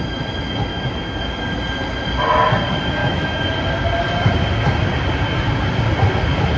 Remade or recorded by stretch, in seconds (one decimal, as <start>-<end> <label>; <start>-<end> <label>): 0.0-0.7 recorded; 0.7-1.3 remade; 1.3-3.0 recorded; 3.0-3.5 remade; 3.5-6.6 recorded